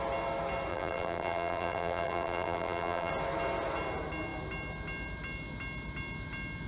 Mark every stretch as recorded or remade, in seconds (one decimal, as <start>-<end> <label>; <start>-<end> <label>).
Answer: 0.0-0.7 recorded; 0.7-3.1 remade; 3.1-6.7 recorded